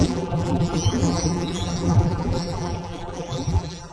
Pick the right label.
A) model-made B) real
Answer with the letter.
A